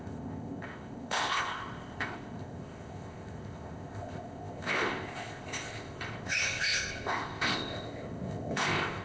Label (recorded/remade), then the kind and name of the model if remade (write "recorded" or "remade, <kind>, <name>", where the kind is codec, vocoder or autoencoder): remade, codec, ZipCodec